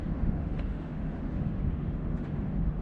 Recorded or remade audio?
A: remade